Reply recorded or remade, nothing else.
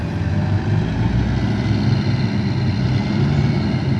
recorded